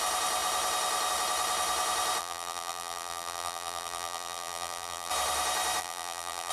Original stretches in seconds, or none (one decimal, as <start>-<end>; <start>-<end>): 0.0-2.2; 5.1-5.8

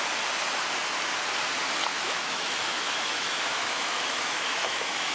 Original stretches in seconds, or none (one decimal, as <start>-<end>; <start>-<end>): 0.0-1.9

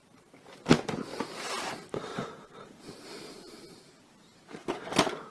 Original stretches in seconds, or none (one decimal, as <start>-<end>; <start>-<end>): 0.0-2.1; 3.9-5.3

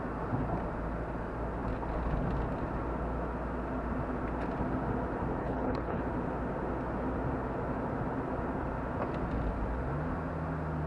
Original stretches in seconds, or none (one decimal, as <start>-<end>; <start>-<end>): 0.0-5.4; 6.0-10.9

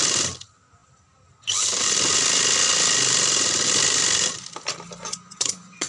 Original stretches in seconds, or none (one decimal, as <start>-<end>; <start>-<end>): 0.0-5.1

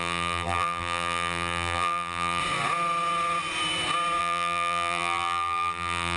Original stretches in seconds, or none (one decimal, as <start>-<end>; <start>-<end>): 2.4-4.2

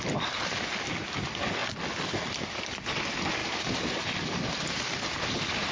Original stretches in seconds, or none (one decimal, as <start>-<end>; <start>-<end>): 0.0-5.7

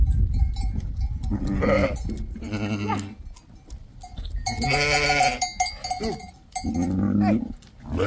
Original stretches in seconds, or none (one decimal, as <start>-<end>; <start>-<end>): 0.0-8.1